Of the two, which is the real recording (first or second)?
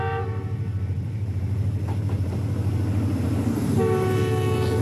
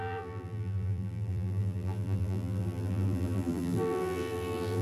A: first